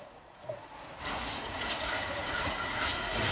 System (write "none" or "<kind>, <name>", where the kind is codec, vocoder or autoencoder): vocoder, Vocos